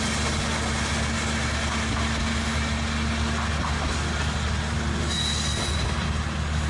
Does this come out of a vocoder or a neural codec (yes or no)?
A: no